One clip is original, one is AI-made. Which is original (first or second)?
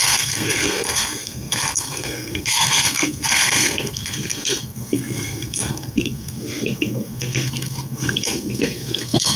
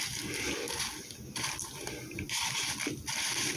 second